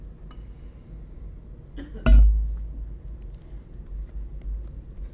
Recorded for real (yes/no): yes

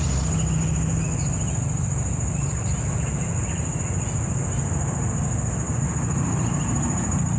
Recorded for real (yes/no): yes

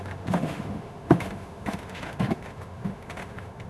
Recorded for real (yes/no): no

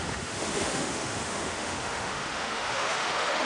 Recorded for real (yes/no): no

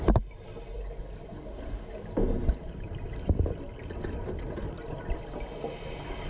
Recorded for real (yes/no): yes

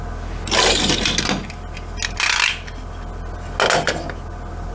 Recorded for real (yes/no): yes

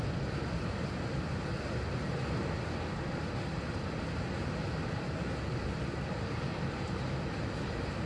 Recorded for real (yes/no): yes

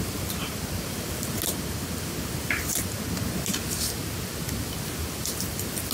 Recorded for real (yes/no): yes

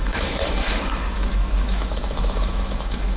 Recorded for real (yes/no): no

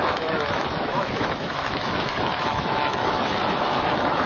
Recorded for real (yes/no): no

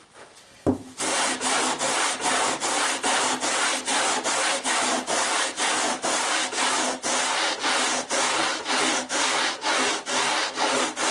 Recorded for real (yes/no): yes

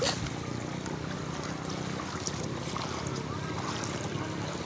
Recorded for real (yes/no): yes